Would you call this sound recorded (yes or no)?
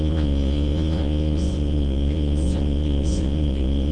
no